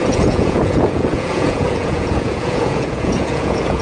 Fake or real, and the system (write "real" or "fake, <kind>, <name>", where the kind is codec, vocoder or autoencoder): fake, vocoder, Vocos